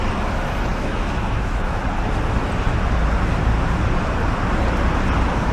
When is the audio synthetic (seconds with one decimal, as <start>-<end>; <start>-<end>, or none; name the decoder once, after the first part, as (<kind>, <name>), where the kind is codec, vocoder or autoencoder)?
0.7-1.8 (autoencoder, DAC-VAE)